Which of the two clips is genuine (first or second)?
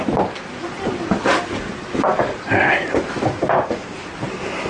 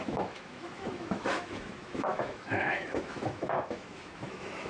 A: first